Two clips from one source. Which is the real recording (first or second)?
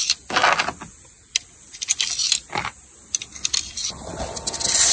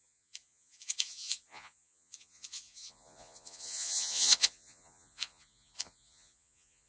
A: first